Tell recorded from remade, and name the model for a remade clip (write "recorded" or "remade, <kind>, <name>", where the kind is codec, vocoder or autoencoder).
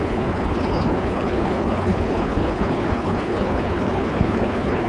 remade, codec, HILCodec